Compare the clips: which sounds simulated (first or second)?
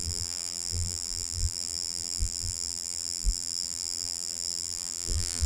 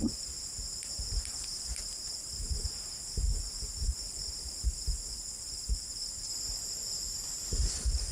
first